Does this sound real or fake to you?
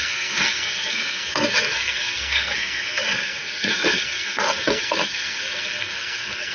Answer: fake